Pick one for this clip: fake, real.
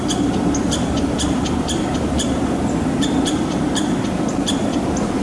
fake